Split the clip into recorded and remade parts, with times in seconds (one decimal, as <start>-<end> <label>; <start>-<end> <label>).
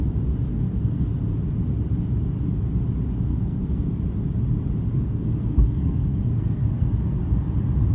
0.0-0.5 recorded; 0.5-1.1 remade; 1.1-3.3 recorded; 3.3-4.0 remade; 4.0-4.9 recorded; 4.9-7.3 remade; 7.3-7.9 recorded